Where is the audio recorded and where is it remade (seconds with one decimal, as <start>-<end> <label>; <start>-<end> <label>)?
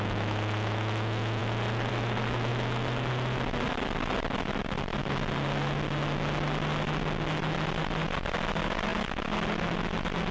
0.0-10.3 recorded